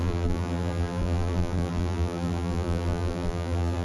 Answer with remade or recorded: remade